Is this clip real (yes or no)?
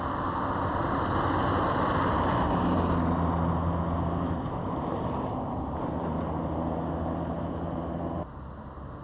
yes